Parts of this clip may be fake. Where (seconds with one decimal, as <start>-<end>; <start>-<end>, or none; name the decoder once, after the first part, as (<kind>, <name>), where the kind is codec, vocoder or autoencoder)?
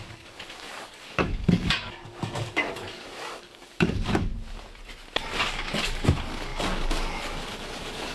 0.0-4.3 (codec, DAC); 5.4-8.1